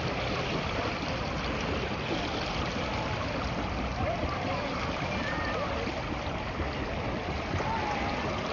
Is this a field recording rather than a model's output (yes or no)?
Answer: yes